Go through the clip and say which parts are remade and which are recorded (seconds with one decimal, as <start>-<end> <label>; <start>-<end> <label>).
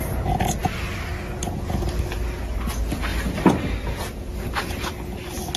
0.0-5.6 recorded